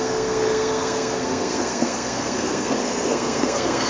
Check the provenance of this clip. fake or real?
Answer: fake